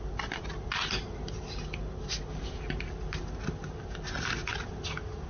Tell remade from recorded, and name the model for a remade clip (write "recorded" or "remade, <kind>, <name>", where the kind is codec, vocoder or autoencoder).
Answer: recorded